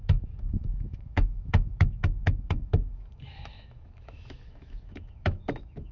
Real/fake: fake